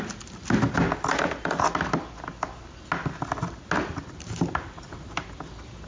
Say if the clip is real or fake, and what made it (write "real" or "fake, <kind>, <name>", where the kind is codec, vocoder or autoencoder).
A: real